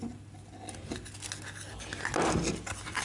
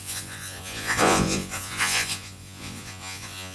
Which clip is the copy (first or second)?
second